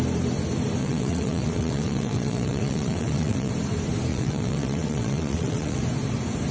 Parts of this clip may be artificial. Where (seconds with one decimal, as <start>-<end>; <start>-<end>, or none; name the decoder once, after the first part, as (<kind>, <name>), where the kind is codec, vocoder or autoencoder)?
0.8-3.5 (vocoder, WaveNeXt); 4.1-5.8